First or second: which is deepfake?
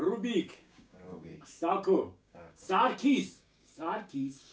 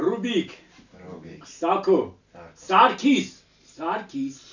first